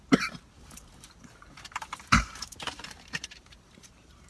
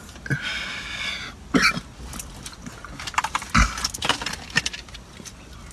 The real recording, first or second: second